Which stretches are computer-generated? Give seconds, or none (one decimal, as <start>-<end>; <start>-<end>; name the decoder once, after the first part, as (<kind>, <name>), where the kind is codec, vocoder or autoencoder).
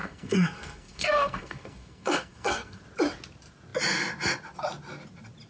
0.0-2.8 (codec, SNAC)